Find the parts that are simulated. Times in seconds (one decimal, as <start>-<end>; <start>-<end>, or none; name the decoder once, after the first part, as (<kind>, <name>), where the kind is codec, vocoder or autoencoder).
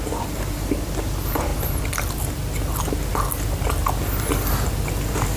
none